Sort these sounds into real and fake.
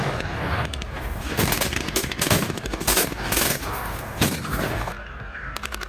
fake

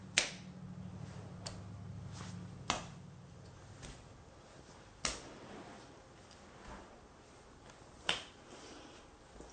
real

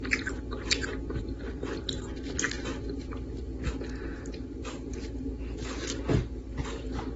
real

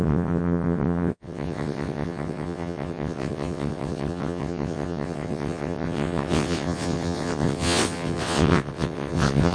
fake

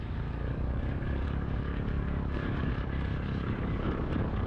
fake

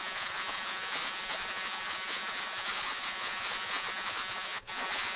fake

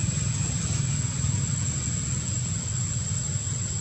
real